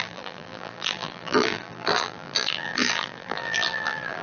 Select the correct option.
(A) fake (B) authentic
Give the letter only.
A